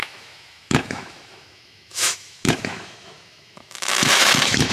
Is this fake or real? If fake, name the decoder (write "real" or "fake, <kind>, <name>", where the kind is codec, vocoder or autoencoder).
fake, autoencoder, DAC-VAE